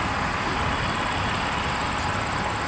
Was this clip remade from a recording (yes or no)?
no